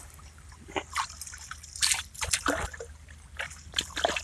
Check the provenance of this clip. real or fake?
real